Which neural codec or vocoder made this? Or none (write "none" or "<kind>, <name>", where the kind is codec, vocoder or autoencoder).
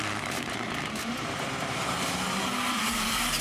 vocoder, BigVGAN v2